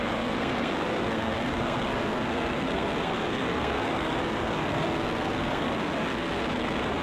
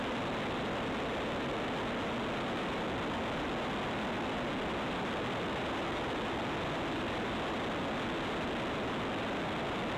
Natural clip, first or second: second